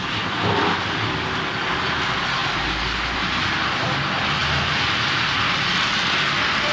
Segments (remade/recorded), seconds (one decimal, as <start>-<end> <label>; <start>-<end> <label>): 0.0-6.7 recorded